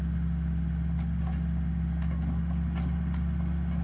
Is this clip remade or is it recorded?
recorded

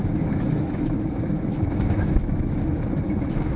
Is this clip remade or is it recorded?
remade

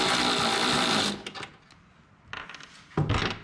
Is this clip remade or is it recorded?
recorded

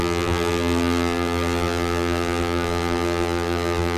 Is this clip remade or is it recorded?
remade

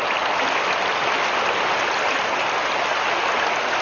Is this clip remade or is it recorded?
recorded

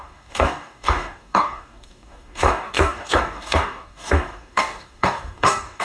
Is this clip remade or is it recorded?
remade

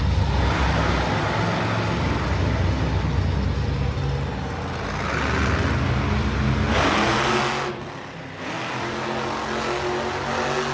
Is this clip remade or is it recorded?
recorded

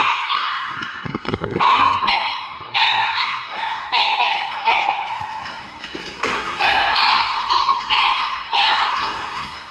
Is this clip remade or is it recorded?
remade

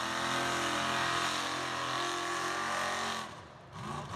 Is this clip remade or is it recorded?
recorded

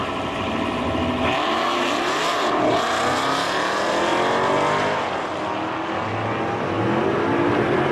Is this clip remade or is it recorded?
recorded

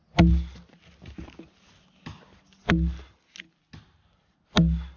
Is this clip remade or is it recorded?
recorded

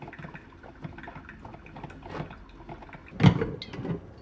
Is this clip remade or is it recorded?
recorded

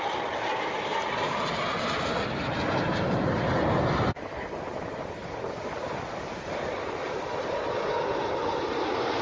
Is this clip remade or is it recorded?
recorded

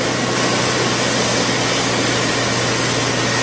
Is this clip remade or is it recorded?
recorded